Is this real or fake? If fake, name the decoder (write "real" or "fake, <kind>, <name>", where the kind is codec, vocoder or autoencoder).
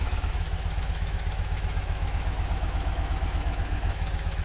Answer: fake, autoencoder, DAC-VAE